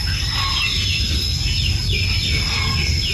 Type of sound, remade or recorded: recorded